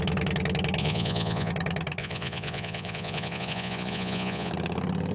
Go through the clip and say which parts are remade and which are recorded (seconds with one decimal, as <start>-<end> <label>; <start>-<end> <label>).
0.0-0.8 recorded; 0.8-1.5 remade; 1.5-2.0 recorded; 2.0-4.5 remade; 4.5-5.1 recorded